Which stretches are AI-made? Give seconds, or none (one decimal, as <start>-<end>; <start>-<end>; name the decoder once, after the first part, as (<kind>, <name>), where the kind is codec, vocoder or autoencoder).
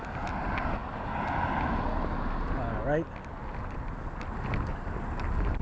none